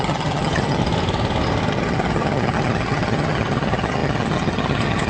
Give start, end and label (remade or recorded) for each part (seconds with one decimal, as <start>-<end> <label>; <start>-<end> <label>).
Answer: 0.0-0.8 remade; 0.8-1.7 recorded; 1.7-5.1 remade